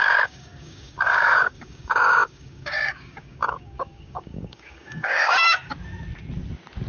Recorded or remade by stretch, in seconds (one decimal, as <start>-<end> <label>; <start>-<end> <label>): 0.0-5.7 remade; 5.7-6.9 recorded